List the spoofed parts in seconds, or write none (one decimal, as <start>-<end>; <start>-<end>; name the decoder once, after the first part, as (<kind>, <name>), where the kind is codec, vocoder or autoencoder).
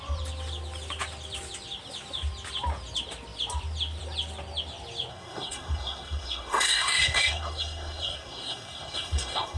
5.1-9.6 (codec, SNAC)